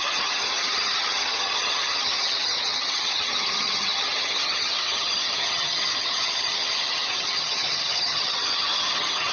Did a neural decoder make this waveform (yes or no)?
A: yes